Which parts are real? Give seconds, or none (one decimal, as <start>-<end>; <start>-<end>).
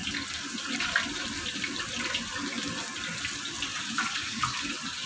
0.0-3.7; 4.5-5.1